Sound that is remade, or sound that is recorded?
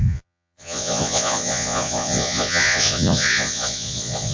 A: remade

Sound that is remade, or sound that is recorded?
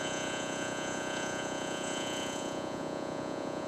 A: remade